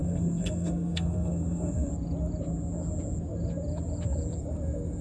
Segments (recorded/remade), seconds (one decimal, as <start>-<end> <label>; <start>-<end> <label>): 0.0-1.9 remade; 1.9-5.0 recorded